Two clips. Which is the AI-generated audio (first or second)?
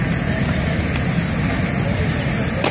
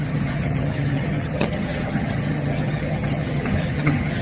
second